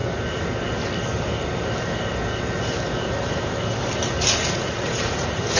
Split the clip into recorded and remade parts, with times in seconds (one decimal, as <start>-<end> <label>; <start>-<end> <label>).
0.0-4.4 recorded; 4.4-5.6 remade